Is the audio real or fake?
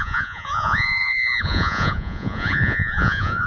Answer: fake